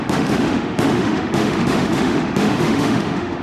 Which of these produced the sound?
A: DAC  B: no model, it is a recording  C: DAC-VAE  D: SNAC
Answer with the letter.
C